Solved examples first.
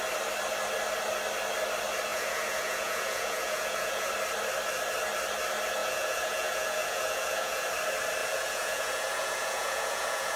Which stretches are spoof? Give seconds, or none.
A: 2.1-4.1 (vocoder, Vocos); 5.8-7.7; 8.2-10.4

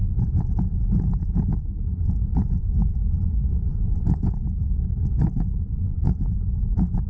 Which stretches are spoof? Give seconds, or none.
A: 1.9-6.2 (vocoder, Vocos)

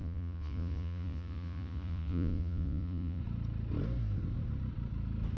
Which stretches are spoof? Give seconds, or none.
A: 0.0-3.2 (vocoder, Vocos)

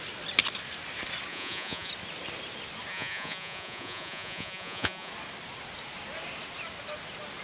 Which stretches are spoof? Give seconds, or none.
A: 1.3-1.9 (vocoder, Vocos); 2.9-5.1

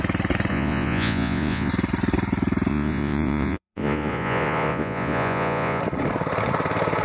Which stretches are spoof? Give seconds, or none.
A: 0.5-1.7 (vocoder, Vocos); 2.7-5.8

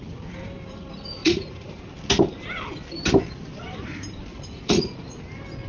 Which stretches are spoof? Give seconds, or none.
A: 1.2-1.9 (vocoder, Vocos); 4.3-5.2

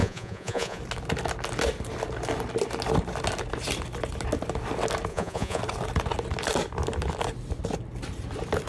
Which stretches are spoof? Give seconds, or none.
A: 0.0-0.8 (vocoder, Vocos); 5.1-5.6

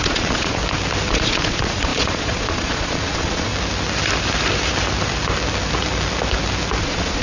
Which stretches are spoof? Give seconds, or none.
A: 0.0-0.6 (vocoder, Vocos); 1.1-3.5; 6.8-7.2